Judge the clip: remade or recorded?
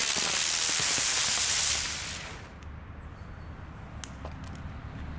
recorded